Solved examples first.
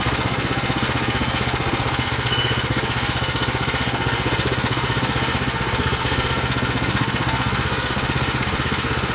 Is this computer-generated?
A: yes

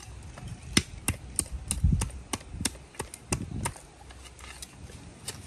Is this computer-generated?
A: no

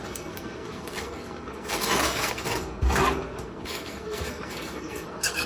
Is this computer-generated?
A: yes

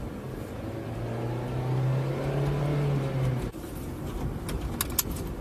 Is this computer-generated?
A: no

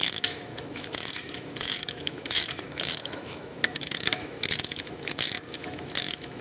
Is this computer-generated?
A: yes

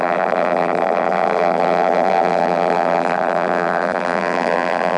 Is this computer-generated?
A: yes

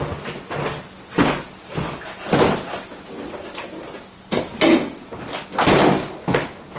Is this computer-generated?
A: no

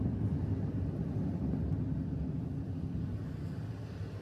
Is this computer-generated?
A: no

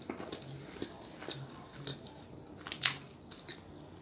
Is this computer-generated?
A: no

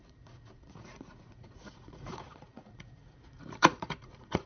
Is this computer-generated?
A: yes